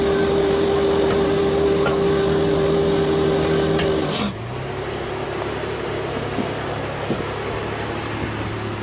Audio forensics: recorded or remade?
recorded